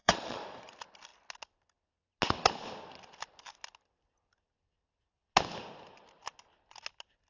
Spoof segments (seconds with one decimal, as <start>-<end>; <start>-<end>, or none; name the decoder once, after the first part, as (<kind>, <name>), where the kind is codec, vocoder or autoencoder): 0.0-0.7 (vocoder, Vocos)